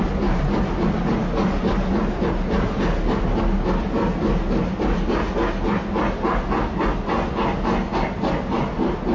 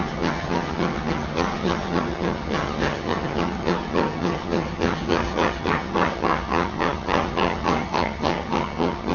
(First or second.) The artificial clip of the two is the second